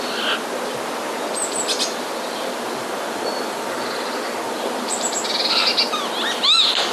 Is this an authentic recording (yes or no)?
yes